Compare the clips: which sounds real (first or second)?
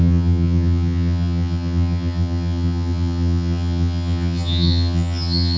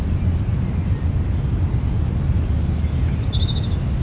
second